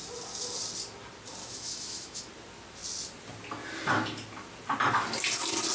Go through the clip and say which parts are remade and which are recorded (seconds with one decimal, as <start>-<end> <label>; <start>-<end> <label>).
0.0-1.4 recorded; 1.4-2.2 remade; 2.2-5.7 recorded